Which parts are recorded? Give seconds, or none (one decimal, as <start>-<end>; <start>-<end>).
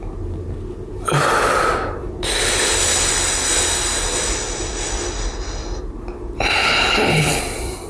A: 0.0-6.6; 7.4-7.9